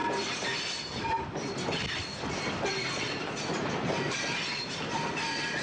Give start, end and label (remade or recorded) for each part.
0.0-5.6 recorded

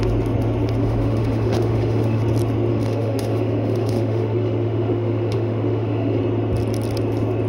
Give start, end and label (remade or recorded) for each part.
0.0-0.8 recorded; 0.8-2.2 remade; 2.2-2.7 recorded; 2.7-6.2 remade; 6.2-7.5 recorded